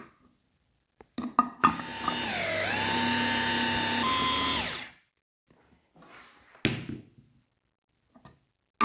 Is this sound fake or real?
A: real